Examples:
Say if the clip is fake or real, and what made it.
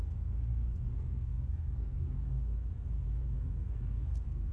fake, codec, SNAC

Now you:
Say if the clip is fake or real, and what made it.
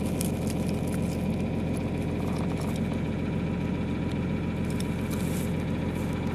real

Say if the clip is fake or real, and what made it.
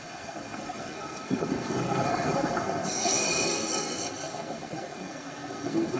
fake, codec, SNAC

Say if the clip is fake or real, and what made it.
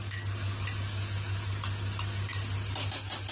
real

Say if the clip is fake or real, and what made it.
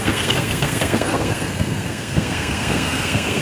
fake, codec, SNAC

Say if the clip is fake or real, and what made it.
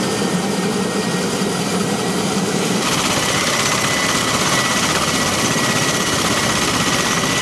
real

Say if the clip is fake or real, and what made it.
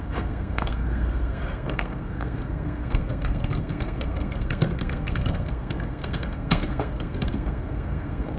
fake, codec, SNAC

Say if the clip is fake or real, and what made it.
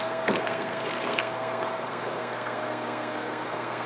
fake, codec, SNAC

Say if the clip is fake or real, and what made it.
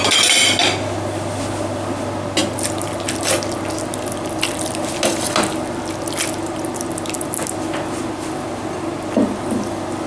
real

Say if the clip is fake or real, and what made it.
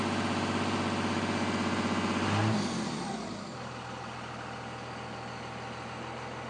real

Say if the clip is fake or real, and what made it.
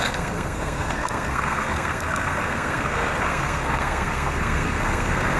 fake, codec, SNAC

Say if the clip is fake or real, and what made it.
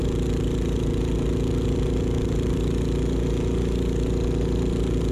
real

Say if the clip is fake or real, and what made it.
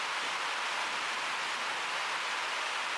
real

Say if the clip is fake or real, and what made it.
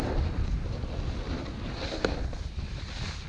real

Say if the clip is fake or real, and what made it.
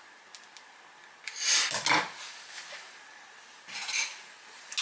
real